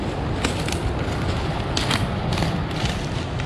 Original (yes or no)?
yes